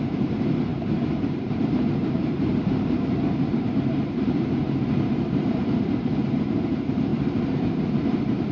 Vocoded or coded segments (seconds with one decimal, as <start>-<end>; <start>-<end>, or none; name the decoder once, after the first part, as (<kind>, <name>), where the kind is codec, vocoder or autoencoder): 0.0-8.5 (vocoder, BigVGAN v2)